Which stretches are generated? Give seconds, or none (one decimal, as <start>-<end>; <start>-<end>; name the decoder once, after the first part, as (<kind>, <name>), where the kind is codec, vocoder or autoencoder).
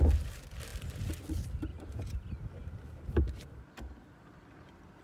1.7-3.2 (vocoder, BigVGAN v2)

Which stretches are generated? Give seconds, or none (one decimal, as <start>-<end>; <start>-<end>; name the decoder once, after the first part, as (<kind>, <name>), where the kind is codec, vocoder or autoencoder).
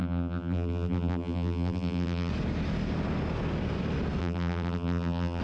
0.0-2.3 (vocoder, BigVGAN v2); 4.2-5.4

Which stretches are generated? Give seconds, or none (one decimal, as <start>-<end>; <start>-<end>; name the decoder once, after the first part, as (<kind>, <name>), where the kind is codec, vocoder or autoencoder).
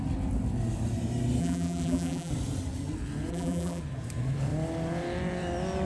1.4-2.3 (vocoder, BigVGAN v2); 3.3-3.8